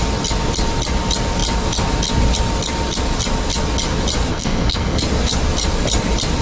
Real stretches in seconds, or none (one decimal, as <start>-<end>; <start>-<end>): 0.0-4.3; 5.0-6.4